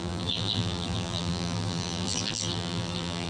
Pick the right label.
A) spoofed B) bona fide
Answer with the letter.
A